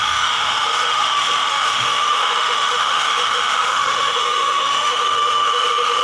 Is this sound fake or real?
fake